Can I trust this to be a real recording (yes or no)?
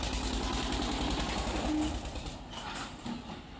yes